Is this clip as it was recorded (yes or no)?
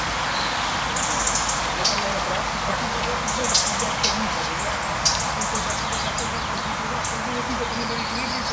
yes